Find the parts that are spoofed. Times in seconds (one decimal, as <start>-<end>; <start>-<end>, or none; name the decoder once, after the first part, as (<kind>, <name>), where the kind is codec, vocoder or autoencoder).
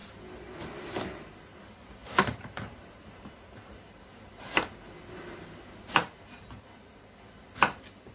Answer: 2.0-3.8 (vocoder, BigVGAN v2)